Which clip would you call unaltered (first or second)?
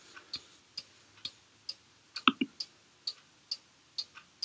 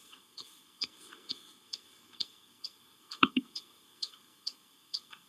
first